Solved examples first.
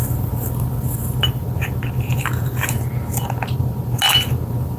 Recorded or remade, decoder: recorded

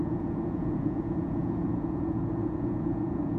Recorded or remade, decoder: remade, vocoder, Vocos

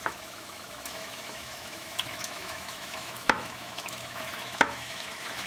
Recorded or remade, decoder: remade, autoencoder, DAC-VAE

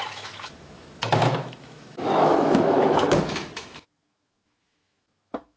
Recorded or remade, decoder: remade, autoencoder, DAC-VAE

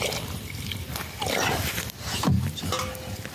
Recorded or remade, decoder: recorded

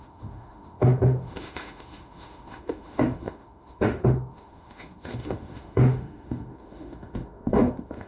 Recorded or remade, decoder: remade, autoencoder, DAC-VAE